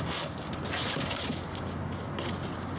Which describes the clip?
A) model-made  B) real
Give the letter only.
B